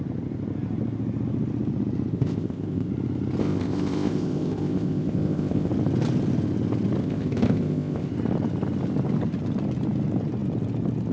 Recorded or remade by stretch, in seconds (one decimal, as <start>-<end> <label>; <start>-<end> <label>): 0.0-2.1 recorded; 2.1-2.9 remade; 2.9-3.4 recorded; 3.4-5.7 remade; 5.7-7.0 recorded; 7.0-8.1 remade; 8.1-11.1 recorded